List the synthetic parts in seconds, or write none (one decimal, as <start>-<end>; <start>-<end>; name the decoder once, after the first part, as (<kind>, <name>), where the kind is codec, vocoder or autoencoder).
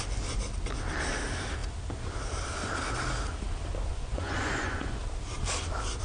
3.9-5.0 (vocoder, Vocos)